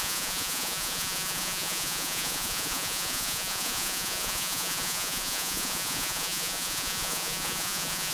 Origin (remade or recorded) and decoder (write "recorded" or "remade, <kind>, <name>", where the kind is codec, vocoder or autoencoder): remade, vocoder, Vocos